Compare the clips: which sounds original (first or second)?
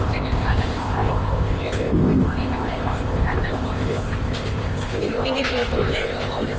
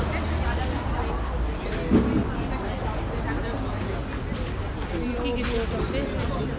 second